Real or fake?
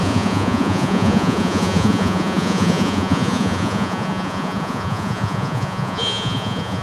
fake